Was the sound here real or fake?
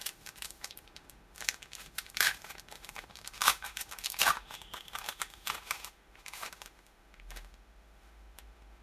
fake